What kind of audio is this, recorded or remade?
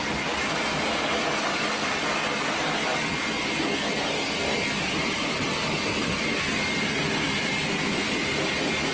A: recorded